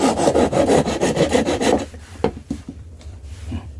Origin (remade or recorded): remade